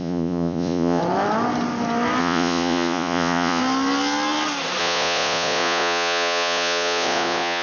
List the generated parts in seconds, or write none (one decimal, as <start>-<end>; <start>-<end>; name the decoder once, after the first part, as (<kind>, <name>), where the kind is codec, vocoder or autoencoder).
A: 0.0-1.0 (vocoder, Vocos); 2.2-3.6; 4.8-7.6